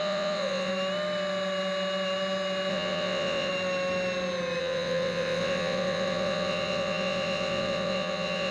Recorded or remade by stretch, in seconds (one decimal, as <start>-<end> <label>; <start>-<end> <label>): 0.0-0.7 remade; 0.7-2.7 recorded; 2.7-3.5 remade; 3.5-4.6 recorded; 4.6-8.5 remade

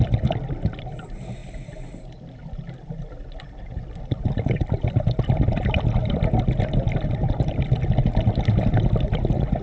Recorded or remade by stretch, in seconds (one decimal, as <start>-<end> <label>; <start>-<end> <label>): 0.0-9.6 recorded